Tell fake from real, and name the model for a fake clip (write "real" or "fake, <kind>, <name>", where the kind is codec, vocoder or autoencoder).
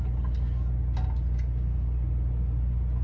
real